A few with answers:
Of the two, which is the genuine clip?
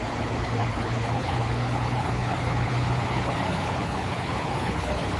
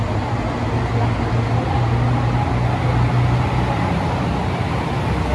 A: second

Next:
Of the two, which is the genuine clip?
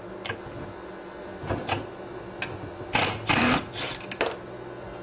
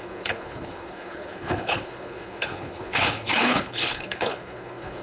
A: first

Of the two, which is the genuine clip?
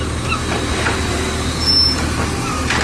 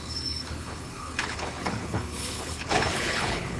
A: first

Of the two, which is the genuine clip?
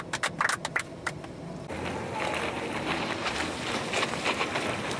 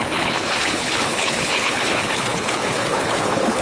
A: first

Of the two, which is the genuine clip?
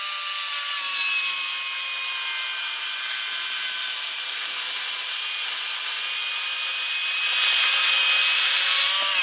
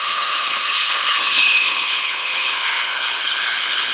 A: first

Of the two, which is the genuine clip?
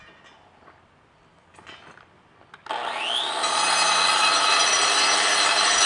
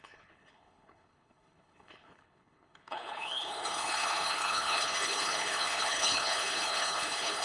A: first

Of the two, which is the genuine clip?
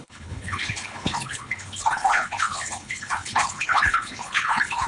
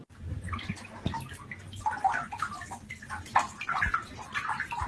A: second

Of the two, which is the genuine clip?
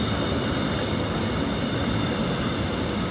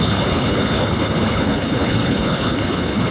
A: first